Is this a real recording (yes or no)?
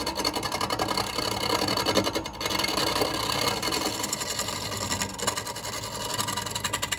yes